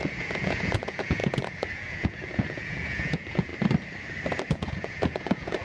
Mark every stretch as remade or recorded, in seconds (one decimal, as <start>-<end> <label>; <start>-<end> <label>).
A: 0.0-3.5 remade; 3.5-4.5 recorded; 4.5-5.6 remade